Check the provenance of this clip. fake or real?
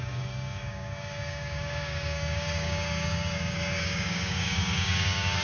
fake